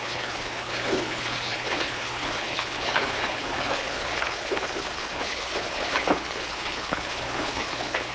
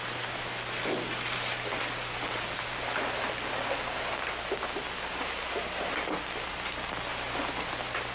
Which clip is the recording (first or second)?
second